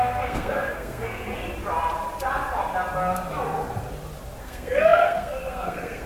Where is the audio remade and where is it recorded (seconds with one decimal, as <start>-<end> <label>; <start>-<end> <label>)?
0.0-1.3 remade; 1.3-4.4 recorded; 4.4-6.1 remade